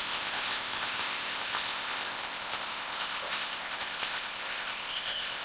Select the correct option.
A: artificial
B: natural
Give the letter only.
A